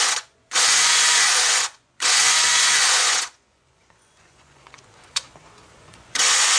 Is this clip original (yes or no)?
no